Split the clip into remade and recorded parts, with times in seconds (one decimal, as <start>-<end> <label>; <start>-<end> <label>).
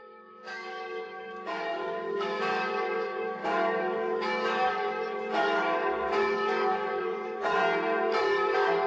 0.0-7.6 remade; 7.6-8.2 recorded; 8.2-8.9 remade